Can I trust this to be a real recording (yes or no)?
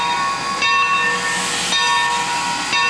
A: yes